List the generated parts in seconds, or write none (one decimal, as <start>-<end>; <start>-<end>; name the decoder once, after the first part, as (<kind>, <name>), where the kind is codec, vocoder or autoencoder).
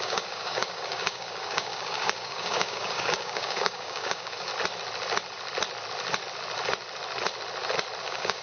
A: 0.0-4.5 (codec, DAC); 8.0-8.4